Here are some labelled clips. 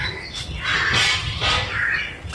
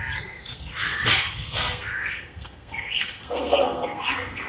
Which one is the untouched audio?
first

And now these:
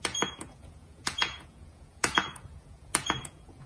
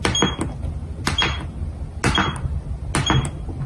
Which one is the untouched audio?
second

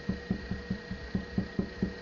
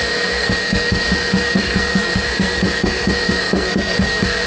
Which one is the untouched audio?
first